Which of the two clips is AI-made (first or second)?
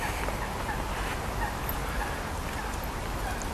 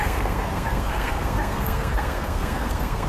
second